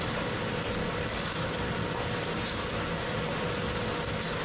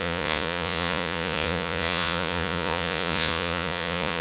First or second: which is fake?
second